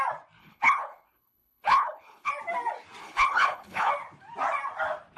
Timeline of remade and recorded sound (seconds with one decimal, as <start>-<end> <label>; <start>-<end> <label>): 0.0-0.4 recorded; 0.4-2.3 remade; 2.3-3.0 recorded; 3.0-3.9 remade; 3.9-5.2 recorded